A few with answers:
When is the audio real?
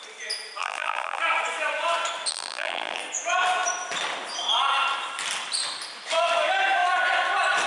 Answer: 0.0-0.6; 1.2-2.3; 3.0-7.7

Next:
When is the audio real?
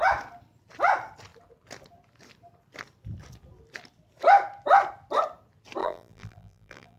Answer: 0.0-5.8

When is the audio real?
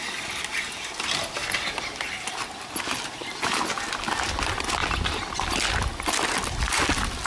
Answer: 0.0-7.3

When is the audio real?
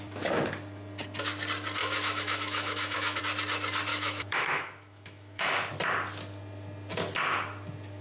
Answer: 0.0-1.8; 3.2-3.9; 5.5-8.0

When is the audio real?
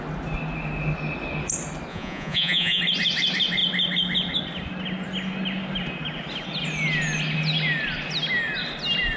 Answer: 0.0-1.9; 2.8-9.2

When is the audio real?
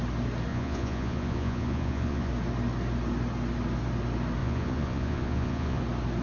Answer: 0.0-0.5; 2.3-4.4; 5.8-6.2